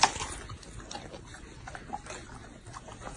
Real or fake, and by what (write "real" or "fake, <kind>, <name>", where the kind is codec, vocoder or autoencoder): real